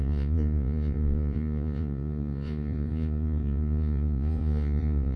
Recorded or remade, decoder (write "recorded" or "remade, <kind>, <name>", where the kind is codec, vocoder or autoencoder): remade, vocoder, Vocos